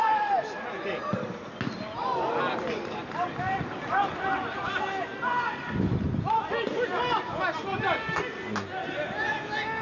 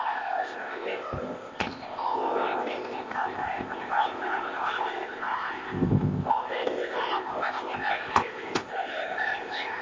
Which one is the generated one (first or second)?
second